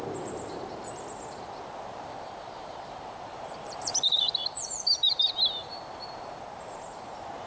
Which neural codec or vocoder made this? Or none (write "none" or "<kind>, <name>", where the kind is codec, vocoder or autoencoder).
vocoder, BigVGAN v2